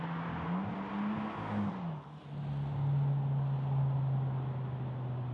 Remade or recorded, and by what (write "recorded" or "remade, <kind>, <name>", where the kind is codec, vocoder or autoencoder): recorded